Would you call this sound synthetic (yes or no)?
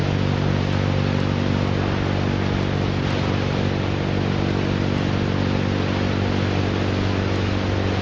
no